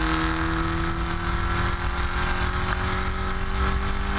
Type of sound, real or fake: real